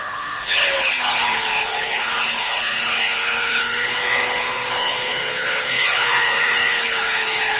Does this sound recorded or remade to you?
remade